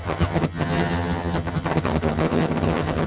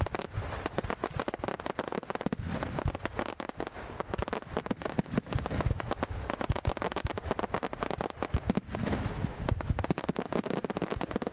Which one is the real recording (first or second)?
second